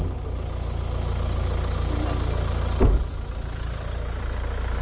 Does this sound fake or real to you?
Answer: real